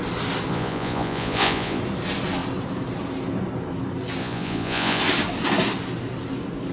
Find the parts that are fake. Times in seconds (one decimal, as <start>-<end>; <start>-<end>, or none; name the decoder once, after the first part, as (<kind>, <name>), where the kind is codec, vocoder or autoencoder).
0.5-1.8 (vocoder, Vocos); 4.2-5.0